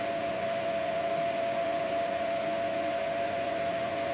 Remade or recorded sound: remade